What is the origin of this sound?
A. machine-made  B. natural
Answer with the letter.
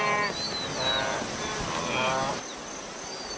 B